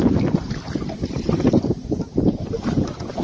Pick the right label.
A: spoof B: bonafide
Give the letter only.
B